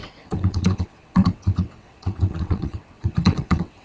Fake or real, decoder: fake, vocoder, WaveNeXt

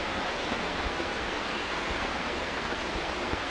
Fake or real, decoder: fake, codec, SNAC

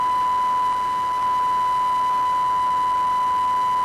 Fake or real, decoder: real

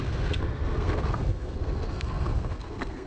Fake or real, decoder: fake, codec, SNAC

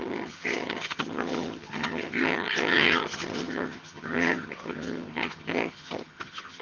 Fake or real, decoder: fake, vocoder, HiFi-GAN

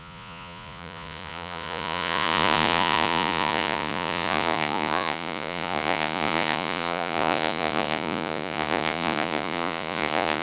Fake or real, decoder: fake, vocoder, Vocos